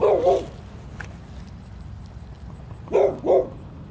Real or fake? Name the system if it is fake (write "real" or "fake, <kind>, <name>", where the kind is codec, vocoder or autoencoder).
real